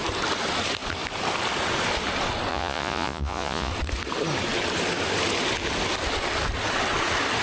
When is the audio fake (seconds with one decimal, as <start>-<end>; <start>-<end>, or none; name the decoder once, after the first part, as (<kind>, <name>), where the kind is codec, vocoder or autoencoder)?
2.5-3.7 (vocoder, Vocos)